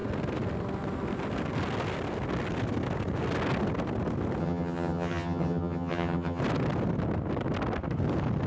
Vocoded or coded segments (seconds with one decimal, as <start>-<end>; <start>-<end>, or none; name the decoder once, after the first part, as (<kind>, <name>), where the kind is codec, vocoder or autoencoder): 4.4-6.4 (vocoder, HiFi-GAN)